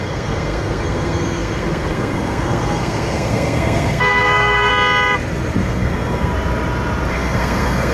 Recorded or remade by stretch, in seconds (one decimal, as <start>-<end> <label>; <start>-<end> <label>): 0.0-4.7 remade; 4.7-5.6 recorded; 5.6-6.3 remade; 6.3-7.1 recorded; 7.1-7.9 remade